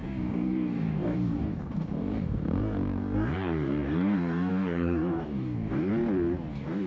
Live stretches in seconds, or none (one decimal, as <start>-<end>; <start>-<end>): 5.9-6.5